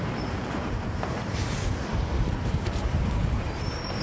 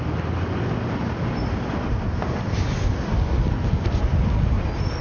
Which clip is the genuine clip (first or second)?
second